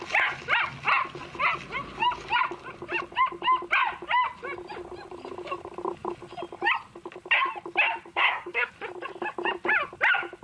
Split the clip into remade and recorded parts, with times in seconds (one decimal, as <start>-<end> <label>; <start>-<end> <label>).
0.0-8.1 recorded; 8.1-8.7 remade; 8.7-10.4 recorded